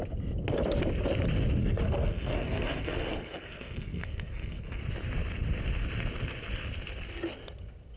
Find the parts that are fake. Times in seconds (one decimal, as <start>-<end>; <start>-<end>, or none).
1.6-4.8